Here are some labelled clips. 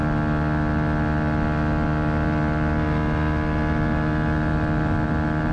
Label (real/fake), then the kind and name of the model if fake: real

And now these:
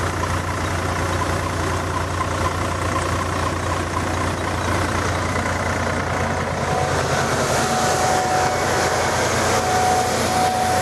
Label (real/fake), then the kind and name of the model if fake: real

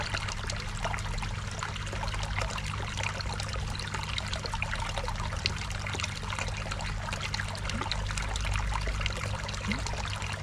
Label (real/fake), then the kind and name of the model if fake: real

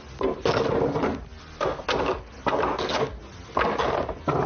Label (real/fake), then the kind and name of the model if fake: real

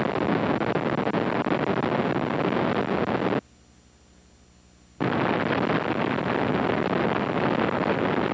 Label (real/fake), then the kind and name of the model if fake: real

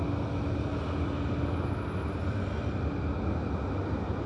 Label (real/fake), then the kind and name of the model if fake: real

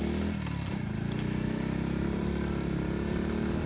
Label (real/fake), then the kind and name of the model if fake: real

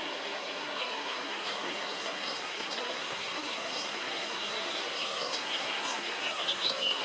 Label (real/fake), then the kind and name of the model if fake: fake, codec, SNAC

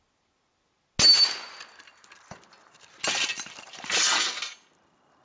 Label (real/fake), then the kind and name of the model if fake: real